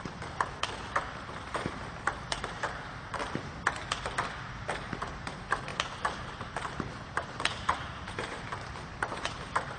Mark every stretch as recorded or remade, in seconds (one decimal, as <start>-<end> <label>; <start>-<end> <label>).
0.0-3.2 remade; 3.2-4.6 recorded; 4.6-9.8 remade